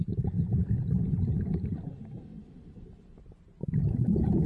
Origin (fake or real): real